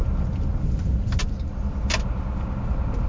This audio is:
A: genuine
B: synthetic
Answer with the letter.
A